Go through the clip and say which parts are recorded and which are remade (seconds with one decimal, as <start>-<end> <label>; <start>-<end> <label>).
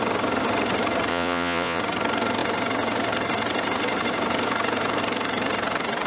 0.0-1.1 recorded; 1.1-1.8 remade; 1.8-6.1 recorded